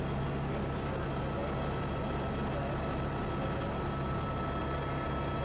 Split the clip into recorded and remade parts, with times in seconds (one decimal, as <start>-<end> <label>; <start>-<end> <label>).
0.0-5.4 recorded